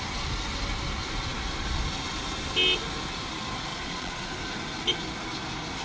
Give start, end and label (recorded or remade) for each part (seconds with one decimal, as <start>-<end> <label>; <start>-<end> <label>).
0.0-3.7 recorded; 3.7-4.3 remade; 4.3-5.8 recorded